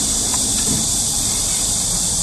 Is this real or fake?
fake